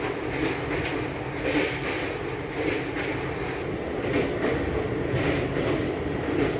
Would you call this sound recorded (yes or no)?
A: yes